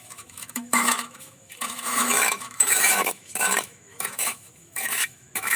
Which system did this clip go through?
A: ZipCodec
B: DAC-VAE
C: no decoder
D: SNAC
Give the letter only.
B